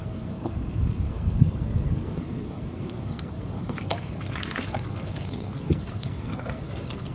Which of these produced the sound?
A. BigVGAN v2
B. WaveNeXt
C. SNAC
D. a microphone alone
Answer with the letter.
C